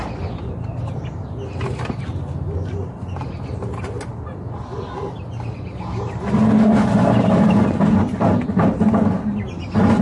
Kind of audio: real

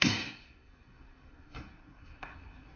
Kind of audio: fake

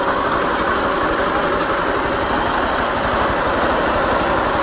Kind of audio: real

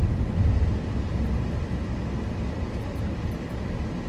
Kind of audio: real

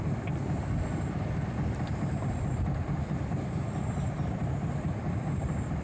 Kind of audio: real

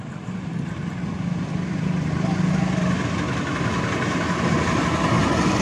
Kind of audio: real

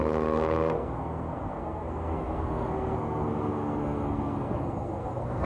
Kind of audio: fake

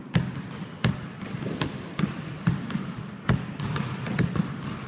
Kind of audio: real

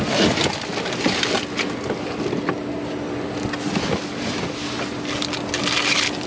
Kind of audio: real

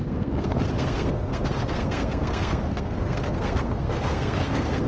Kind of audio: fake